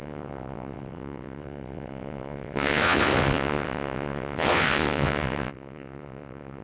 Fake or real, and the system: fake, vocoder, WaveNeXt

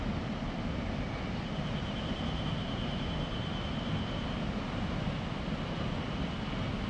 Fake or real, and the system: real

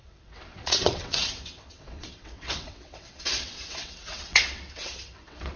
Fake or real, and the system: fake, vocoder, WaveNeXt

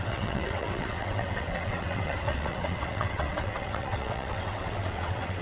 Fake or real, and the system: fake, vocoder, WaveNeXt